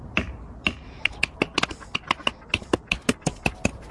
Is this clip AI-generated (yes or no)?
no